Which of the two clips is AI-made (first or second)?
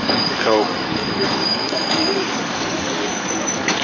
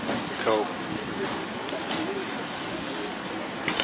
first